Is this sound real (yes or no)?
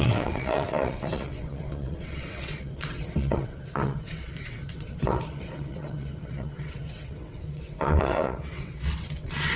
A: no